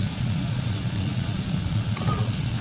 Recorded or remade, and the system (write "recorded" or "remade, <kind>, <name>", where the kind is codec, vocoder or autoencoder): remade, vocoder, Vocos